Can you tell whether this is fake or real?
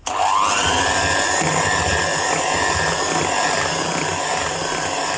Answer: real